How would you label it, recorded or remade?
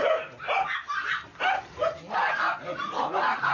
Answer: recorded